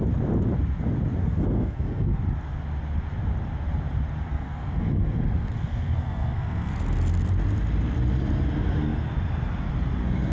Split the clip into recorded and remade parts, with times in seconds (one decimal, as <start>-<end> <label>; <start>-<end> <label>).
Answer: 0.0-1.2 recorded; 1.2-2.2 remade; 2.2-4.3 recorded; 4.3-6.7 remade; 6.7-10.3 recorded